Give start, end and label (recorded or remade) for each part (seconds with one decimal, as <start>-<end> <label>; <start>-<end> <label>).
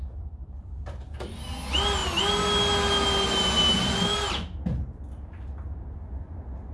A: 0.0-0.4 recorded; 0.4-1.1 remade; 1.1-6.7 recorded